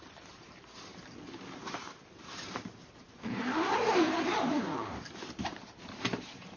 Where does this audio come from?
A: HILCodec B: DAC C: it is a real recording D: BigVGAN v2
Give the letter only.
D